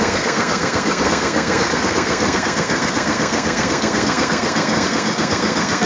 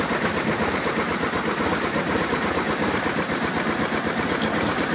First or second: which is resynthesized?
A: first